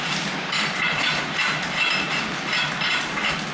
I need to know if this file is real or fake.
real